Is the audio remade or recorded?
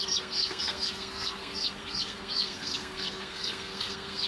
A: remade